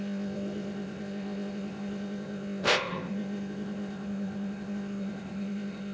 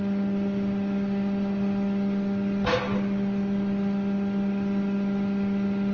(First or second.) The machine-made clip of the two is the first